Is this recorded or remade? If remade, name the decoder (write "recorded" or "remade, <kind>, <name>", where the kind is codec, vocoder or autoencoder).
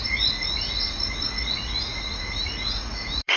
remade, vocoder, Vocos